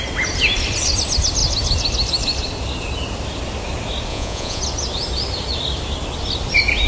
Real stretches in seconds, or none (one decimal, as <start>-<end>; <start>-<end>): 0.0-4.1; 4.6-6.9